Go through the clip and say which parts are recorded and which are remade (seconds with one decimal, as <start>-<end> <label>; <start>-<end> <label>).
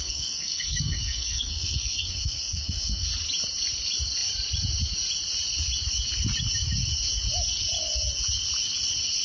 0.0-3.1 remade; 3.1-9.2 recorded